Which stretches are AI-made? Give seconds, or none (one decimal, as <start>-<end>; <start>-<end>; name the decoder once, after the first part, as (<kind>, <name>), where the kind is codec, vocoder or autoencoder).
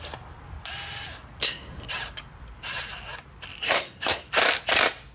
1.4-1.9 (codec, SNAC); 3.6-4.3